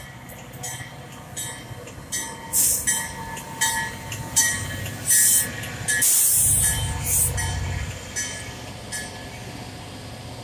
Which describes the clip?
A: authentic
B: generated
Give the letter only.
A